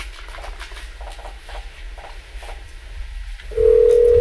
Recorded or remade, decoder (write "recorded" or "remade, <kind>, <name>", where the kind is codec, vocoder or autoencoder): recorded